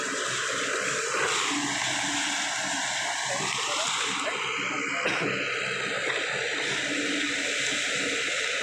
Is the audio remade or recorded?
recorded